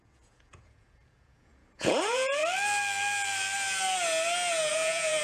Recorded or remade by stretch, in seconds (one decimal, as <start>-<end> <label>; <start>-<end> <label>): 0.0-2.4 remade; 2.4-4.7 recorded; 4.7-5.2 remade